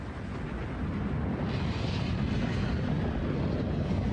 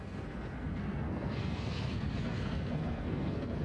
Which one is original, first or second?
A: first